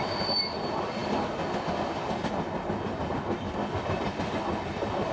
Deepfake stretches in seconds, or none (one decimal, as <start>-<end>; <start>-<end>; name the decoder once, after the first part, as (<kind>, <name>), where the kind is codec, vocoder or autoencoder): none